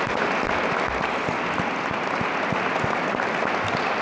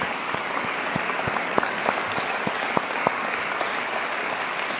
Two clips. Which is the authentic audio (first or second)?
first